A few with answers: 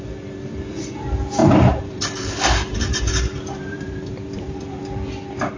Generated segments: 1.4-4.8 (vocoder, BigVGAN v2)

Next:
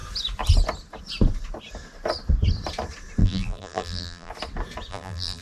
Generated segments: 3.2-4.3 (vocoder, BigVGAN v2); 4.9-5.4

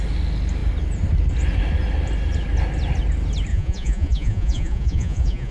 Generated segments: 3.5-5.5 (vocoder, Vocos)

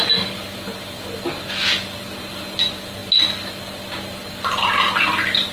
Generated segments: none

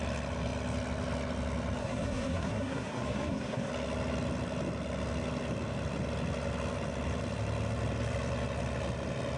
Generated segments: 1.8-3.7 (codec, SNAC)

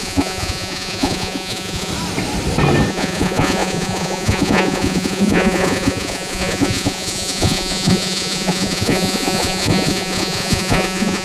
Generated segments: 0.0-1.9 (vocoder, Vocos); 2.9-11.2

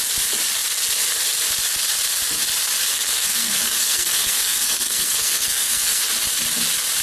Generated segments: 2.9-6.0 (codec, SNAC)